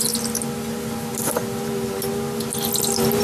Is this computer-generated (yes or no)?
no